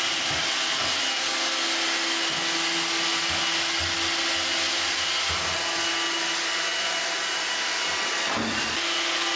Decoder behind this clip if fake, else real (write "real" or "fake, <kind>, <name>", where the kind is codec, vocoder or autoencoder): real